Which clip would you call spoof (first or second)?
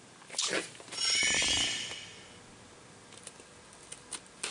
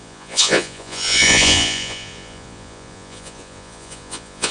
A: second